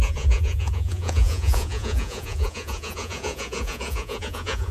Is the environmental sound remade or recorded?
remade